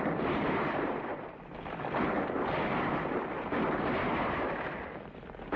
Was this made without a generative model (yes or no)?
yes